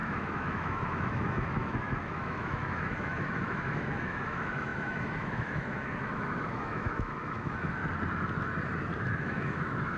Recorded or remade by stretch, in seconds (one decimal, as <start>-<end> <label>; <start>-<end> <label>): 0.0-7.8 remade; 7.8-9.2 recorded; 9.2-10.0 remade